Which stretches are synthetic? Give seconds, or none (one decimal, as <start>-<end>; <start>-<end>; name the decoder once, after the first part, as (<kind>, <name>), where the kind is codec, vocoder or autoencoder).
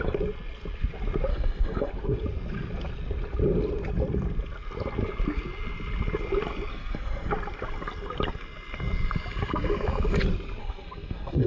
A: 1.3-1.9 (codec, SNAC); 6.7-7.3; 10.6-11.5